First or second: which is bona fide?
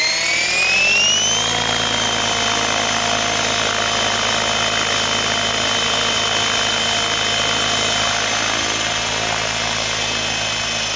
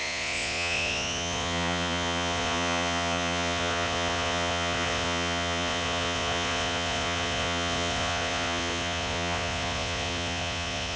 first